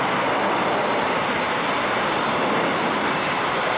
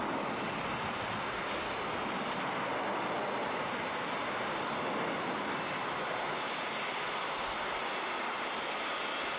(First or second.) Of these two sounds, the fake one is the first